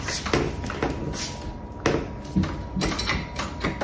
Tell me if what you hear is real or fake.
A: real